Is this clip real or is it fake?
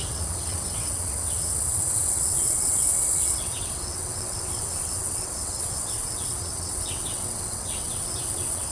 fake